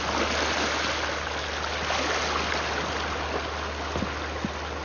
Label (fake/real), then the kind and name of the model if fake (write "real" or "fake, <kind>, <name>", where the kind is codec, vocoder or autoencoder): real